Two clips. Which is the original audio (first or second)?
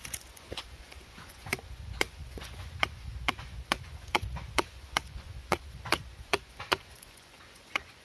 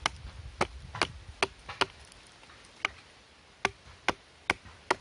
second